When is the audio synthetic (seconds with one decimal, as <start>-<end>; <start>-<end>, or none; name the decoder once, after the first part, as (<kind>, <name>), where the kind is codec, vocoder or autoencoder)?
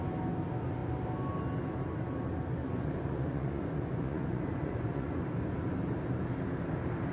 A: 2.6-5.2 (vocoder, Vocos)